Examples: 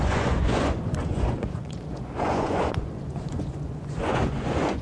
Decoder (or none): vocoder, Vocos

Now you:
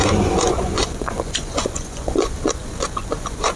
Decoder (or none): vocoder, Vocos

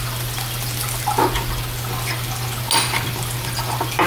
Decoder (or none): none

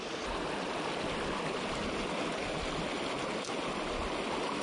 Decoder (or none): none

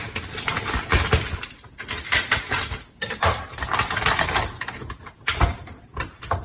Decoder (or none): none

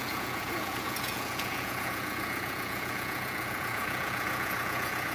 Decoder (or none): vocoder, Vocos